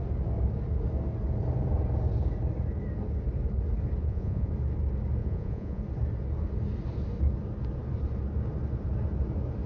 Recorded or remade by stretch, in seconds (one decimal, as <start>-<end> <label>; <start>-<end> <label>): 0.0-4.0 recorded; 4.0-4.5 remade; 4.5-5.2 recorded; 5.2-5.8 remade; 5.8-9.7 recorded